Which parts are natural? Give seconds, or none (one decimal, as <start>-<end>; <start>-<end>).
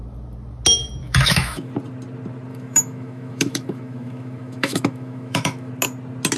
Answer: 0.0-1.0; 1.7-2.5; 5.7-6.4